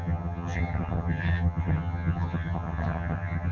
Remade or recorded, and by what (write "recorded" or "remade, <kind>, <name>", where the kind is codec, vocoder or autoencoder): remade, vocoder, HiFi-GAN